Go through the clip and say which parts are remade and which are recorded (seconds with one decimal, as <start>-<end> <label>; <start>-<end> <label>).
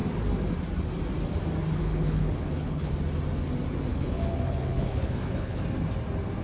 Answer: 0.0-1.8 recorded; 1.8-2.9 remade; 2.9-3.9 recorded; 3.9-5.6 remade; 5.6-6.4 recorded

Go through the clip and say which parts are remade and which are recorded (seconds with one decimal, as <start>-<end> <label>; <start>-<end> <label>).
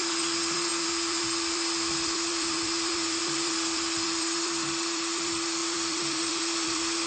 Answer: 0.0-7.1 remade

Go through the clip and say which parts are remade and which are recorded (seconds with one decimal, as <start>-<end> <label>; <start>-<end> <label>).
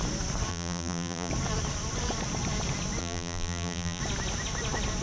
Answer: 0.0-0.5 recorded; 0.5-1.3 remade; 1.3-3.0 recorded; 3.0-4.0 remade; 4.0-5.0 recorded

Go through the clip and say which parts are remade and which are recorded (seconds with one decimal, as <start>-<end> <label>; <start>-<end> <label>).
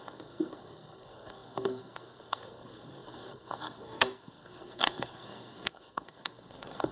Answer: 0.0-6.9 remade